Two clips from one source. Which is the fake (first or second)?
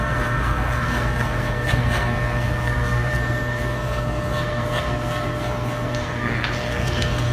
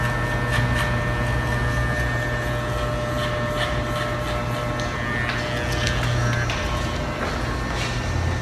first